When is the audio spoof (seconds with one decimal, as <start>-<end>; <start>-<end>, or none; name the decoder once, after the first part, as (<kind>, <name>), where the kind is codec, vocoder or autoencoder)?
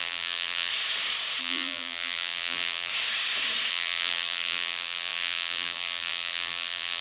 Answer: 0.0-0.7 (vocoder, BigVGAN v2); 1.4-2.9; 3.7-7.0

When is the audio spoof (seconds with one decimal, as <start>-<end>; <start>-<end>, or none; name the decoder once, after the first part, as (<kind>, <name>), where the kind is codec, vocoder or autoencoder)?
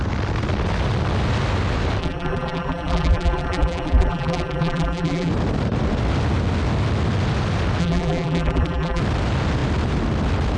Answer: 2.0-5.3 (vocoder, BigVGAN v2); 7.8-9.0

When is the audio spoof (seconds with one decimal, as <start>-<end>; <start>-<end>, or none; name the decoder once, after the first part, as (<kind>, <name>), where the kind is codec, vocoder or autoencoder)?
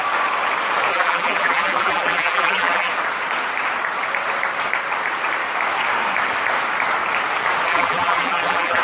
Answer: 0.9-2.9 (vocoder, BigVGAN v2); 7.7-8.8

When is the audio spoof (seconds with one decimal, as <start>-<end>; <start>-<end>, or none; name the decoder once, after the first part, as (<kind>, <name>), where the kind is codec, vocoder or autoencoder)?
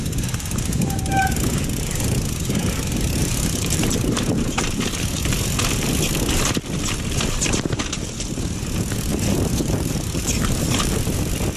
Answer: 3.2-4.8 (vocoder, BigVGAN v2); 9.1-10.9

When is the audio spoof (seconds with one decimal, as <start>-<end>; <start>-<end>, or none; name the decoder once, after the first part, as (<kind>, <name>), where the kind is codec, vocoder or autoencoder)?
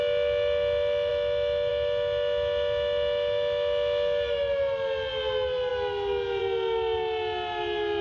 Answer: none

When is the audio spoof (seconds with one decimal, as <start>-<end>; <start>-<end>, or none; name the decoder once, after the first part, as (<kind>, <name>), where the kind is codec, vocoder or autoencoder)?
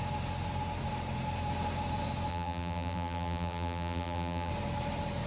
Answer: 2.3-4.5 (vocoder, BigVGAN v2)